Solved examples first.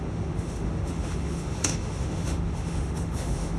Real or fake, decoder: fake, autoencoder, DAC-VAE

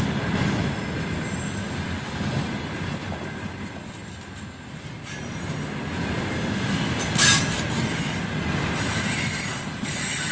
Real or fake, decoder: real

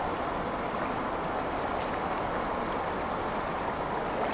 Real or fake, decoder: real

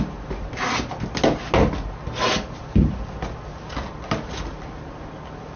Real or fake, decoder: real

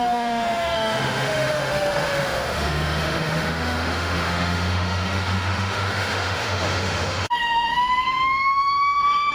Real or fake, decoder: fake, autoencoder, DAC-VAE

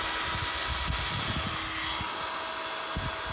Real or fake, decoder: real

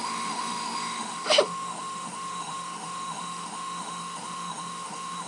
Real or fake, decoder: fake, autoencoder, DAC-VAE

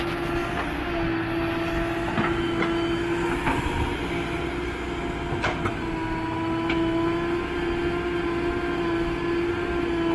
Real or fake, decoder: real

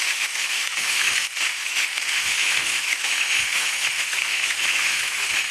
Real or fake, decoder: fake, autoencoder, DAC-VAE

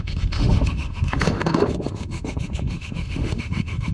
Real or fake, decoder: fake, autoencoder, DAC-VAE